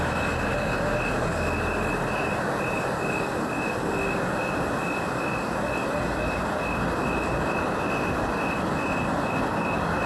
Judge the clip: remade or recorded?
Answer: recorded